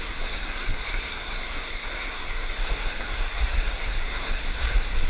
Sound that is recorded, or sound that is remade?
remade